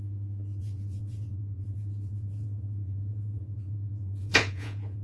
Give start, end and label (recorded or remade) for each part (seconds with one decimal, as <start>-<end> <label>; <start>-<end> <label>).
0.0-0.6 recorded; 0.6-5.0 remade